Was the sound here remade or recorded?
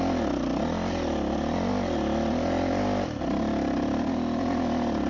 recorded